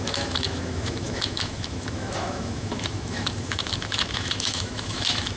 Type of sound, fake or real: fake